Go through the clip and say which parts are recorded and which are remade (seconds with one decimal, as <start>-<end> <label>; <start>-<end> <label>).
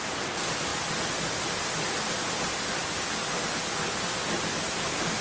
0.0-5.2 recorded